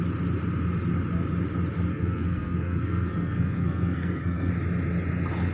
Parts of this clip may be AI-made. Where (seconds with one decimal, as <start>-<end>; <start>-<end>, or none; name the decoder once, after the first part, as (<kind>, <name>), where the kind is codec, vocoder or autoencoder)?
1.9-4.5 (codec, SNAC)